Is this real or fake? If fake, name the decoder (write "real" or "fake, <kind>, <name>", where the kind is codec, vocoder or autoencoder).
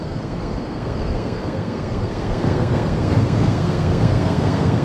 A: fake, codec, SNAC